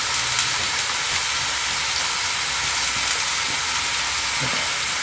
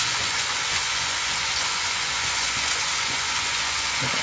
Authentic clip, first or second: first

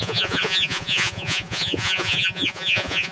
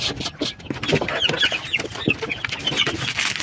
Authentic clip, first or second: second